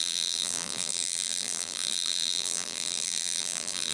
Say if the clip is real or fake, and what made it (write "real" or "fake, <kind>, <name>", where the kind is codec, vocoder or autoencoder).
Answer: fake, vocoder, BigVGAN v2